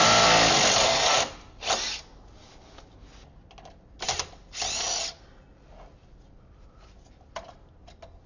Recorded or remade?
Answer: recorded